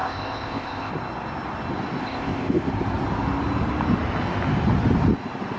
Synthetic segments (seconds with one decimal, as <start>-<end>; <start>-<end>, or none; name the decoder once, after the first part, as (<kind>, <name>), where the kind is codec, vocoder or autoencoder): 0.0-0.9 (codec, ZipCodec); 2.0-2.7